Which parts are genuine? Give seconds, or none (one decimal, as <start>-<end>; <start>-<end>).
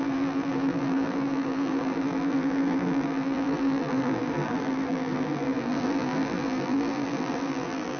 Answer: none